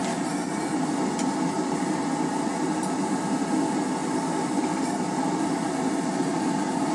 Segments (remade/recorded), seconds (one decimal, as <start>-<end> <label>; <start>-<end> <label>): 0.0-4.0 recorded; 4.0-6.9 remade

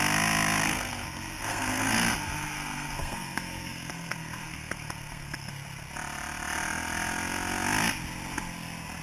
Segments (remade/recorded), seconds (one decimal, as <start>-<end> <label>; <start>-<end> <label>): 0.0-0.6 recorded; 0.6-5.5 remade; 5.5-9.0 recorded

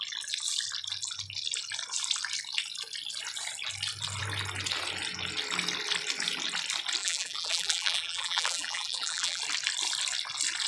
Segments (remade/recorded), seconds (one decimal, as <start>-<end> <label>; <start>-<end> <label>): 0.0-7.0 recorded; 7.0-9.4 remade; 9.4-10.7 recorded

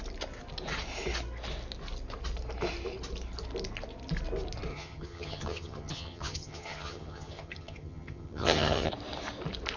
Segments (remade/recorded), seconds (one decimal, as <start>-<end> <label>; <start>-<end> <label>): 0.0-4.7 recorded; 4.7-8.9 remade; 8.9-9.8 recorded

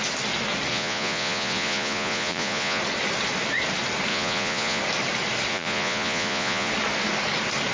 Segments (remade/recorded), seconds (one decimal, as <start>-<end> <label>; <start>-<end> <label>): 0.0-0.7 recorded; 0.7-2.8 remade; 2.8-4.1 recorded; 4.1-4.8 remade; 4.8-5.5 recorded; 5.5-6.7 remade; 6.7-7.7 recorded

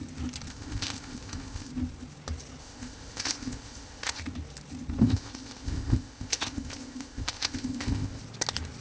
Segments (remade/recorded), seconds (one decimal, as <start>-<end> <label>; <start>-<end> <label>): 0.0-0.5 recorded; 0.5-1.7 remade; 1.7-2.6 recorded; 2.6-4.2 remade; 4.2-5.0 recorded; 5.0-8.2 remade; 8.2-8.8 recorded